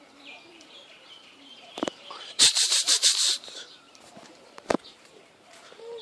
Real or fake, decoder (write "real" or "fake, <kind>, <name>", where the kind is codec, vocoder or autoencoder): fake, vocoder, BigVGAN v2